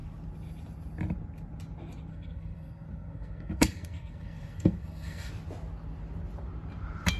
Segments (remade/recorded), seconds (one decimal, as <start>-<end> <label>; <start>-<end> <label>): 0.0-2.1 recorded; 2.1-5.3 remade; 5.3-7.2 recorded